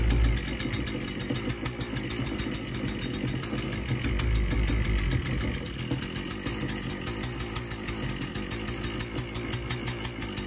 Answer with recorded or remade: recorded